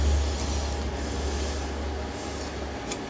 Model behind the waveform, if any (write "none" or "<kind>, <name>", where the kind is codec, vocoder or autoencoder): none